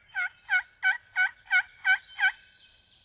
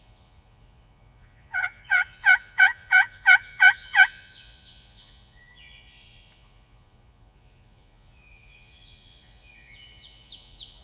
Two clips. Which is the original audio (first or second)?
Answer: first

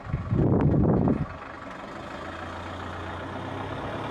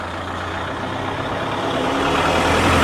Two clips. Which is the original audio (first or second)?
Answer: first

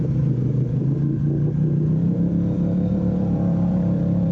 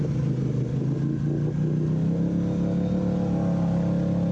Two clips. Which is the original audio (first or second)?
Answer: second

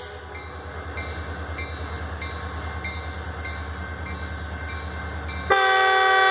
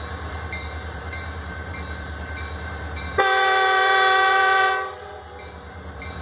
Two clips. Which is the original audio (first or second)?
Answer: first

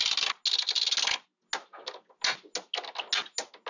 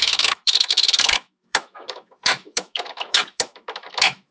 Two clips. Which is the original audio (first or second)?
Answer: first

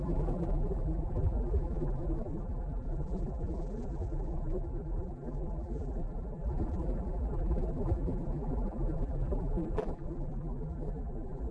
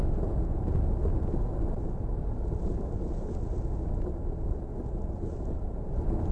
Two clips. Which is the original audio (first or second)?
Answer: second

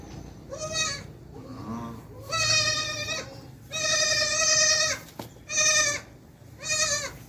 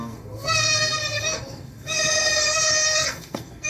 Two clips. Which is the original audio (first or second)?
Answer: first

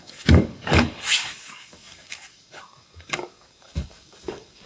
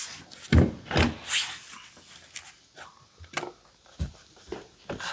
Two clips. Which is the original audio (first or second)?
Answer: second